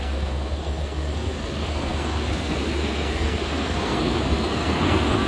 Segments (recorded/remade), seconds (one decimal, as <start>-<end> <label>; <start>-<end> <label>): 0.0-5.3 remade